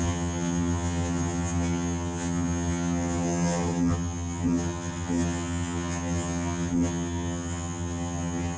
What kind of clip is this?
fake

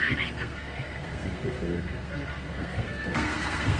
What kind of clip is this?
fake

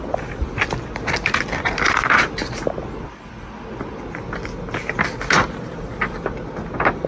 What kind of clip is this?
real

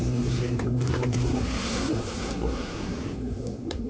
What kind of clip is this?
fake